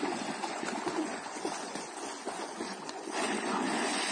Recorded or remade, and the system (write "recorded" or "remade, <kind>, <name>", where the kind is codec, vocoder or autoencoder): remade, vocoder, Vocos